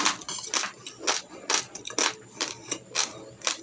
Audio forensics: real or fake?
real